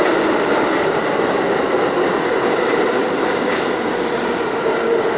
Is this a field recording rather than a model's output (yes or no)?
yes